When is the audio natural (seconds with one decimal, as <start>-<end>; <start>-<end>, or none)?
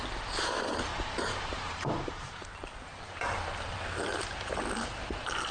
0.0-0.9; 4.2-5.5